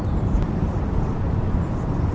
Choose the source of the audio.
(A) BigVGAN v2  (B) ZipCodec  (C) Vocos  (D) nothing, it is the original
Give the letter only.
D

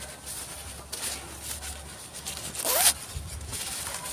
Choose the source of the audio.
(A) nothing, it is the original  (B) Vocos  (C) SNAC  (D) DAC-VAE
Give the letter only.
A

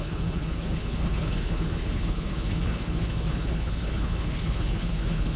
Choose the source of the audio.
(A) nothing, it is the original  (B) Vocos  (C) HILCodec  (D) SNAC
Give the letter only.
C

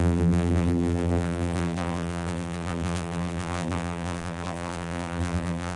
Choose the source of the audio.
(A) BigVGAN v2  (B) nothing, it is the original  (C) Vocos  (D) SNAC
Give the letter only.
A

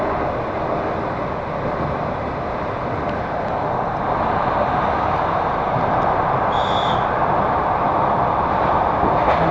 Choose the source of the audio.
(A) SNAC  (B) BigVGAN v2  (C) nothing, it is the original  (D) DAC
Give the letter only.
C